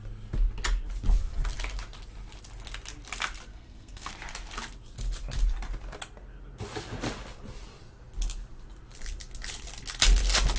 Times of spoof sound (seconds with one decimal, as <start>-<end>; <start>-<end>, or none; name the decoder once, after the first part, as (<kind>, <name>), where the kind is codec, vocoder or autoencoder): 3.5-4.1 (codec, SNAC)